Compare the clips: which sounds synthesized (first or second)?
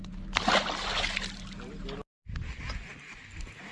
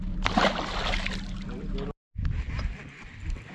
second